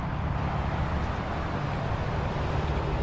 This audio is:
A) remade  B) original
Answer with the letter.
B